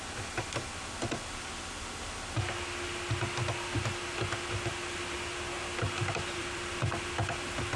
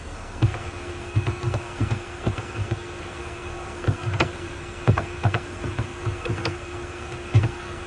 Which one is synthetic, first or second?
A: second